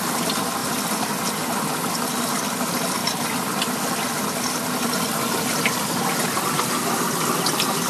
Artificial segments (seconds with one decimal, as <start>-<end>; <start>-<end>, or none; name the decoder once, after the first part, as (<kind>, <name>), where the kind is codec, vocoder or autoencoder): none

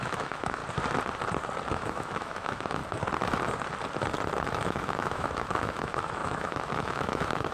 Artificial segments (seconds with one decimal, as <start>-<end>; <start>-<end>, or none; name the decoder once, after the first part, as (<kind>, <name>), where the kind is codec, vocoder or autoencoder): 0.0-0.6 (autoencoder, DAC-VAE); 1.7-2.8; 4.5-7.5

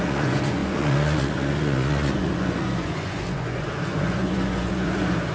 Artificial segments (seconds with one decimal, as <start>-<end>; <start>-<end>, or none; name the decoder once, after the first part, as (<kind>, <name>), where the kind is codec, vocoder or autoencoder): 0.0-5.3 (vocoder, Vocos)

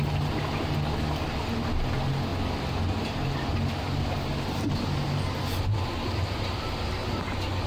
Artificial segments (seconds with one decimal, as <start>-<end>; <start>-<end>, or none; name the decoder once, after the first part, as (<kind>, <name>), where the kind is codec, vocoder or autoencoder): none